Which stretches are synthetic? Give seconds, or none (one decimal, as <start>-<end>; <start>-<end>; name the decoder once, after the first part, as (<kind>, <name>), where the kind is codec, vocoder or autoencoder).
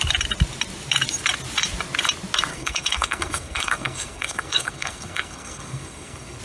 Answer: 2.5-6.4 (codec, SNAC)